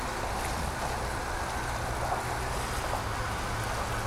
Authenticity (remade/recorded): recorded